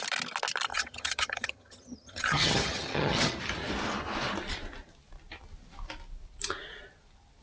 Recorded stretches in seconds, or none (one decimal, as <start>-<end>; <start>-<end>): 0.0-0.7; 3.4-7.4